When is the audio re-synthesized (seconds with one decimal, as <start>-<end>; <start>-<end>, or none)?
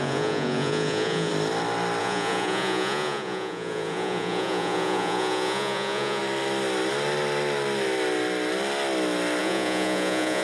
0.0-1.3; 2.0-6.2; 9.4-10.4